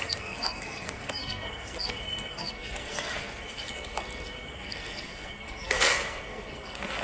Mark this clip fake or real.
fake